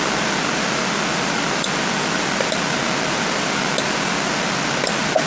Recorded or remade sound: recorded